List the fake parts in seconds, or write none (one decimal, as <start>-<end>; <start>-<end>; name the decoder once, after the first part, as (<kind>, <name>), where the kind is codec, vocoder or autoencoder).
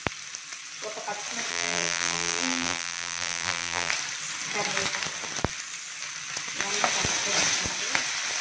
1.5-3.9 (vocoder, BigVGAN v2)